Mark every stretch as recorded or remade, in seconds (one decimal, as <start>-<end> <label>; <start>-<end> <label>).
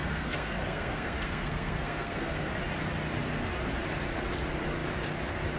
0.0-2.5 remade; 2.5-5.6 recorded